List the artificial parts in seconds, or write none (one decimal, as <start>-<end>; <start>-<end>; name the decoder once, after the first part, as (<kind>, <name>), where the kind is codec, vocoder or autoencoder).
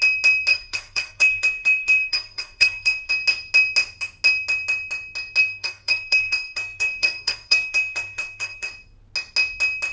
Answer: 0.5-3.1 (codec, SNAC); 5.4-8.7